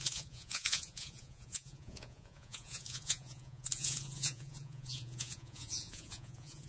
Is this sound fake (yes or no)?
yes